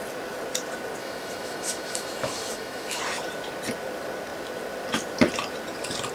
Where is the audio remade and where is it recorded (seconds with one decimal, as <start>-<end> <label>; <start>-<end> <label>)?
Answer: 0.0-1.0 recorded; 1.0-3.0 remade; 3.0-6.1 recorded